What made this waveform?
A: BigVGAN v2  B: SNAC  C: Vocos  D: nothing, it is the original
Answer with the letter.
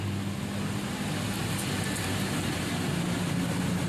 D